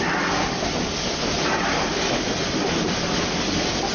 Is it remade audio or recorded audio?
recorded